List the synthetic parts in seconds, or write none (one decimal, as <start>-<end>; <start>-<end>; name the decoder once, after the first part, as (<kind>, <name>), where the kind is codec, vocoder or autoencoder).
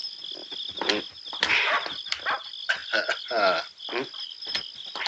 none